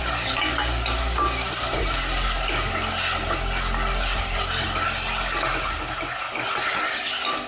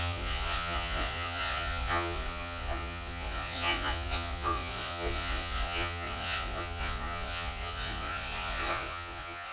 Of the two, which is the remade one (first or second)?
second